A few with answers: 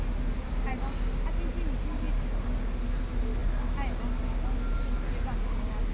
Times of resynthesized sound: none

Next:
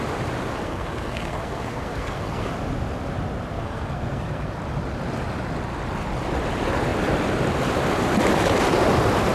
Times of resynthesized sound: 0.5-2.5 (codec, SNAC); 3.5-4.5

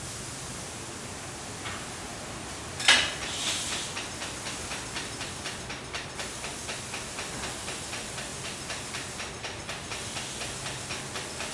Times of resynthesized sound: none

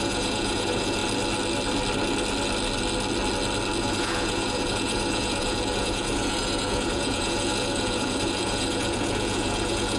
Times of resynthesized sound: 0.0-1.0 (vocoder, Vocos); 3.8-10.0

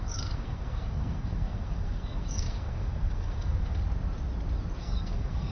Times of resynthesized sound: 0.0-3.8 (codec, SNAC); 4.8-5.5

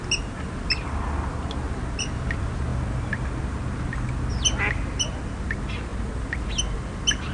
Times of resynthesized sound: none

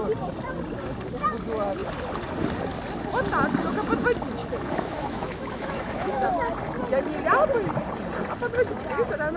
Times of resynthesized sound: 4.4-6.3 (autoencoder, DAC-VAE)

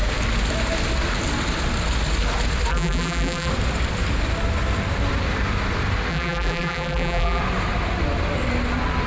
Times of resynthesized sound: 2.7-3.5 (vocoder, BigVGAN v2); 6.1-7.4